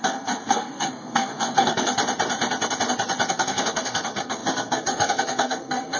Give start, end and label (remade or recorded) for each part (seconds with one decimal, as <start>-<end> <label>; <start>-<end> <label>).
0.0-1.9 remade; 1.9-3.3 recorded; 3.3-6.0 remade